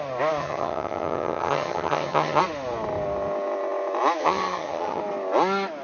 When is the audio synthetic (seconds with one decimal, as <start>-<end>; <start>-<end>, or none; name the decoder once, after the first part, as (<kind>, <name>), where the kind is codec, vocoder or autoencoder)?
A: 0.4-2.4 (vocoder, HiFi-GAN); 4.2-5.0